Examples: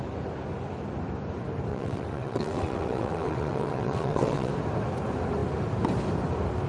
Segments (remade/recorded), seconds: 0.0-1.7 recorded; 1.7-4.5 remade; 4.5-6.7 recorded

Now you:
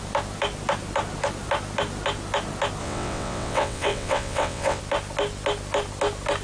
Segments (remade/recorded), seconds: 0.0-2.8 recorded; 2.8-4.8 remade; 4.8-6.4 recorded

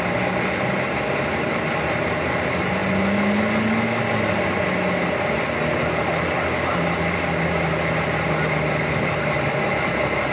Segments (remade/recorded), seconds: 0.0-10.3 recorded

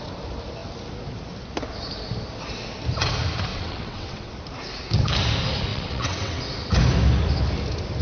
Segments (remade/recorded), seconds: 0.0-3.5 recorded; 3.5-4.3 remade; 4.3-5.7 recorded; 5.7-6.4 remade; 6.4-8.0 recorded

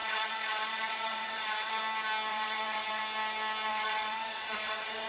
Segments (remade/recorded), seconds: 0.0-1.8 remade; 1.8-2.3 recorded; 2.3-3.0 remade; 3.0-3.7 recorded; 3.7-5.1 remade

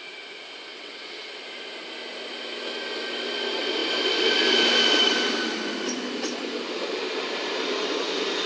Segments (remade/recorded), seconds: 0.0-0.7 recorded; 0.7-1.3 remade; 1.3-8.5 recorded

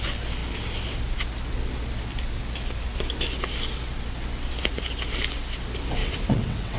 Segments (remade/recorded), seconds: 0.0-6.0 recorded; 6.0-6.8 remade